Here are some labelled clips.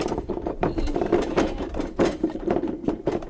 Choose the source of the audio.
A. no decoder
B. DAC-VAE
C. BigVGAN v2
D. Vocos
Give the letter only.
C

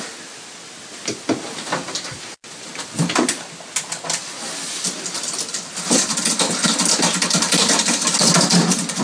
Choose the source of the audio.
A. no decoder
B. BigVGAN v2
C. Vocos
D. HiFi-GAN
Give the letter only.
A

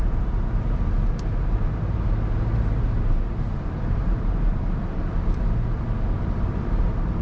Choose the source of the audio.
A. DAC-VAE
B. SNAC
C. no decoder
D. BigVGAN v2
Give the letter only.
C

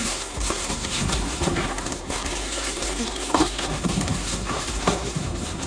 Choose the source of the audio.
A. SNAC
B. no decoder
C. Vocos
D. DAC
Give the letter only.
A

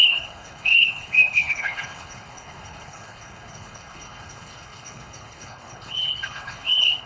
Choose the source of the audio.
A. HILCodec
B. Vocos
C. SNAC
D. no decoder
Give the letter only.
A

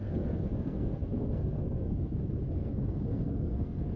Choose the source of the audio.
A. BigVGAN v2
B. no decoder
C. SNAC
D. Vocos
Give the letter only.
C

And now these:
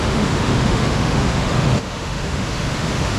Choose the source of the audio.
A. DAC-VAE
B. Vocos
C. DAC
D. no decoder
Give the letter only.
A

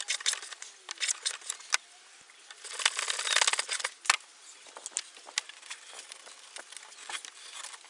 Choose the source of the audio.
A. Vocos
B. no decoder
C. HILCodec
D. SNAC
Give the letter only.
B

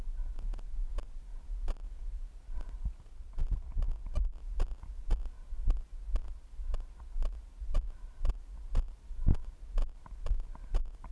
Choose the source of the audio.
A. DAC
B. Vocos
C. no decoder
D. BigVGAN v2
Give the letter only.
C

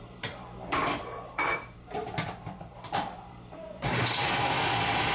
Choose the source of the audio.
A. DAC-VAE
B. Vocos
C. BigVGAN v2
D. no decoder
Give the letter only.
C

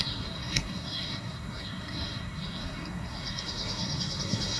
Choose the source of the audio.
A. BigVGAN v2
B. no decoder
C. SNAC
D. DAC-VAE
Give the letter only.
C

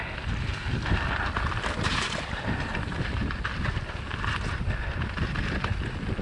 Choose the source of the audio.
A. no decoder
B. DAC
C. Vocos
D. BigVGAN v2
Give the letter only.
A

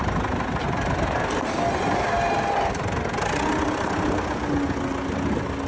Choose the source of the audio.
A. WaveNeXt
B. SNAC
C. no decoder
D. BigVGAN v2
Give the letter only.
C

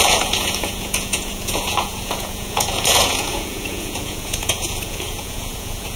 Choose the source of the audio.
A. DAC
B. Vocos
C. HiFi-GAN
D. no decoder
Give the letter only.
B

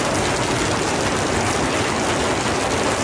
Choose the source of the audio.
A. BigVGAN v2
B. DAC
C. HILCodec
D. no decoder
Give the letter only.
D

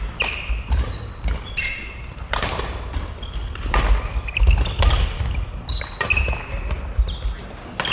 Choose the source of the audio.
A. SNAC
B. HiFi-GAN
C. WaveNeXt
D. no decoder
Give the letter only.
D